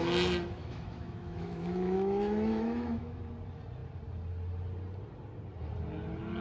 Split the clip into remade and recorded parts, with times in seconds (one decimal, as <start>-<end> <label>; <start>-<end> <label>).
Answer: 0.0-0.6 recorded; 0.6-3.2 remade; 3.2-6.4 recorded

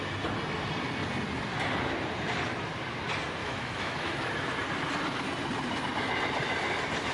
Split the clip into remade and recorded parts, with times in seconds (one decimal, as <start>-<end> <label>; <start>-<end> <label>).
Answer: 0.0-3.4 recorded; 3.4-4.5 remade; 4.5-7.1 recorded

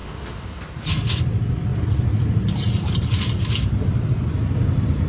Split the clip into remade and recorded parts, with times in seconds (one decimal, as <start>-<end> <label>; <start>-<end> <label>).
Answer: 0.0-0.6 remade; 0.6-5.1 recorded

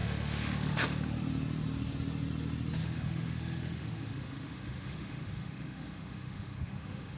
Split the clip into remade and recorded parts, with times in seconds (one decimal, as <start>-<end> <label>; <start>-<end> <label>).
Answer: 0.0-1.0 remade; 1.0-2.8 recorded; 2.8-7.2 remade

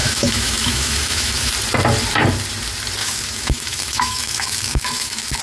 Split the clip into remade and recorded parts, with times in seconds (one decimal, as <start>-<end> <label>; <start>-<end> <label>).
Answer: 0.0-1.5 remade; 1.5-3.0 recorded; 3.0-5.4 remade

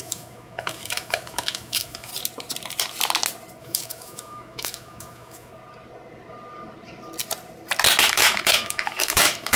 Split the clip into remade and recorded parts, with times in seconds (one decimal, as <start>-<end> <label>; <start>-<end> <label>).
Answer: 0.0-2.1 remade; 2.1-3.6 recorded; 3.6-5.5 remade; 5.5-8.0 recorded; 8.0-9.6 remade